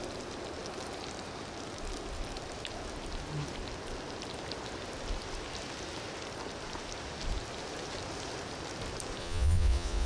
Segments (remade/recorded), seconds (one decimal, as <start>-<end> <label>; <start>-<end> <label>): 0.0-9.2 recorded; 9.2-10.1 remade